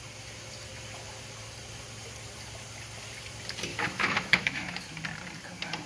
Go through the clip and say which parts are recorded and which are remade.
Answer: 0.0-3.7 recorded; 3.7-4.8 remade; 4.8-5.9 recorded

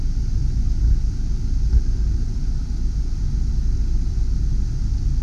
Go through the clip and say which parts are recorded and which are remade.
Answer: 0.0-5.2 recorded

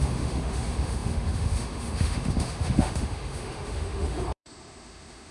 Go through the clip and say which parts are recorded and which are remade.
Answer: 0.0-5.3 remade

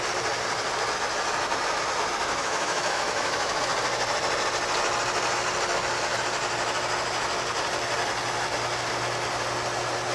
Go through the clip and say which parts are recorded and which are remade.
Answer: 0.0-2.4 recorded; 2.4-3.6 remade; 3.6-10.1 recorded

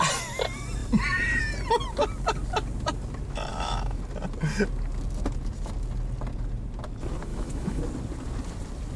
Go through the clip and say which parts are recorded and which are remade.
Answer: 0.0-3.5 recorded; 3.5-4.0 remade; 4.0-7.3 recorded; 7.3-7.8 remade; 7.8-9.0 recorded

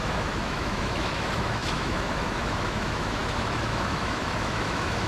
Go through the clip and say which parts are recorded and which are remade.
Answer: 0.0-5.1 remade

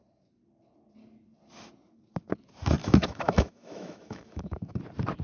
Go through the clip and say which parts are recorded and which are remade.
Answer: 0.0-2.8 recorded; 2.8-4.8 remade; 4.8-5.2 recorded